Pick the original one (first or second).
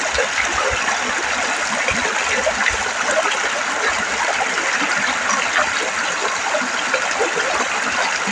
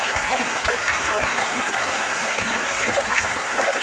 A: first